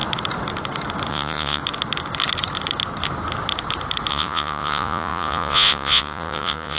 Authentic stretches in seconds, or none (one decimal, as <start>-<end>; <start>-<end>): 0.0-1.1; 1.6-4.1